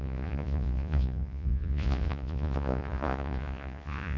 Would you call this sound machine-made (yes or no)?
yes